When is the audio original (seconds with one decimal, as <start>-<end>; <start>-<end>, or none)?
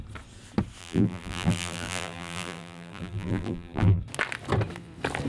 0.0-0.8; 4.0-5.3